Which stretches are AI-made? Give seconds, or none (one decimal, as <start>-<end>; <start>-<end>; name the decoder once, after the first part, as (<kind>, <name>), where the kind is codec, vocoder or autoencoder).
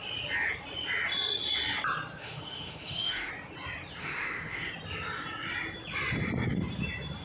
2.2-3.3 (autoencoder, DAC-VAE); 4.0-4.7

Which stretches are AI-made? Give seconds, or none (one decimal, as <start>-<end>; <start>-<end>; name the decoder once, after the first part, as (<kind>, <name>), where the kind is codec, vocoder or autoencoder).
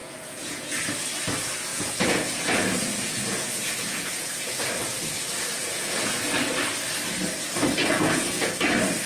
0.0-0.7 (vocoder, Vocos); 1.7-4.7; 5.6-6.1; 7.8-8.5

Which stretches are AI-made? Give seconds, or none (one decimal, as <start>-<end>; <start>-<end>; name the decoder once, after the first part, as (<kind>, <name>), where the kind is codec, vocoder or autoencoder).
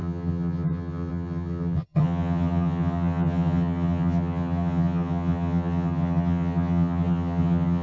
0.0-7.8 (vocoder, HiFi-GAN)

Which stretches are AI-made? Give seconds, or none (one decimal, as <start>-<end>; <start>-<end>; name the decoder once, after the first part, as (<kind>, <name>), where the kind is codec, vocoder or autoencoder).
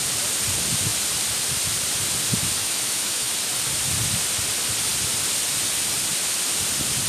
2.6-3.3 (autoencoder, DAC-VAE)